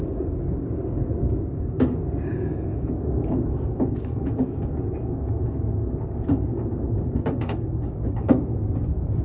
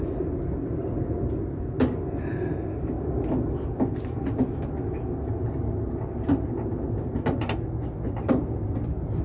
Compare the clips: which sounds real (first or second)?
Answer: second